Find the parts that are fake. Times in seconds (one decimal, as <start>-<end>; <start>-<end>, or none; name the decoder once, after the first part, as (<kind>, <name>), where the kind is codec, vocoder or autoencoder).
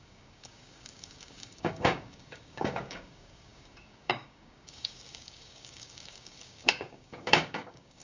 0.0-8.0 (codec, DAC)